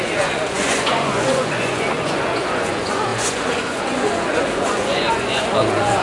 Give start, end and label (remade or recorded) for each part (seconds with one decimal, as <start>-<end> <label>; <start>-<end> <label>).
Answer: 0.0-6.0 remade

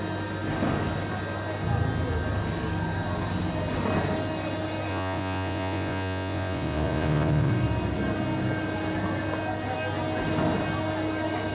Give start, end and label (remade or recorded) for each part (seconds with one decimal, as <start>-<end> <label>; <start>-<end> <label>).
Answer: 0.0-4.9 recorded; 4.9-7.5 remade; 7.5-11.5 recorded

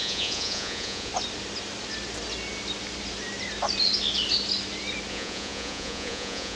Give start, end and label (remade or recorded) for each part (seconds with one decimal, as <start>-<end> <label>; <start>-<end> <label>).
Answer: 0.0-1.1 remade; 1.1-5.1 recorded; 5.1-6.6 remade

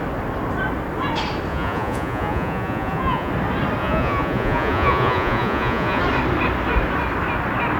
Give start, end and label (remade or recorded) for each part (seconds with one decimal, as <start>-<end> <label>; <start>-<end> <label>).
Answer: 0.0-1.5 recorded; 1.5-3.3 remade; 3.3-3.8 recorded; 3.8-6.0 remade; 6.0-7.8 recorded

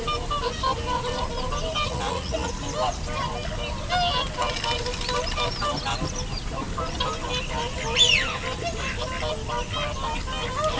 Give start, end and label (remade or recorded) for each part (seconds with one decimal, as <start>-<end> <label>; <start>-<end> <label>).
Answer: 0.0-1.9 recorded; 1.9-2.5 remade; 2.5-10.8 recorded

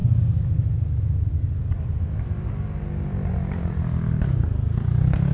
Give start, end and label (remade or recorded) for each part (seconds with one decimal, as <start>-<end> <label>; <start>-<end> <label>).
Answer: 0.0-5.3 recorded

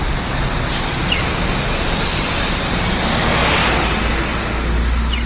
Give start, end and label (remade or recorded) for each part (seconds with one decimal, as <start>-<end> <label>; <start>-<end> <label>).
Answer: 0.0-5.3 recorded

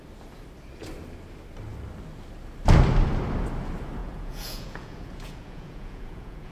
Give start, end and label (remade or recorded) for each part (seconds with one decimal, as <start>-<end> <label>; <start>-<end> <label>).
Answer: 0.0-4.0 recorded; 4.0-6.5 remade